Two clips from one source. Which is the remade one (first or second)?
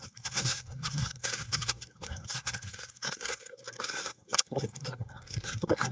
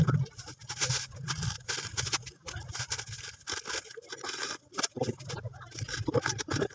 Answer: first